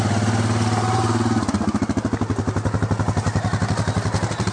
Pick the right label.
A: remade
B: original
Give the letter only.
B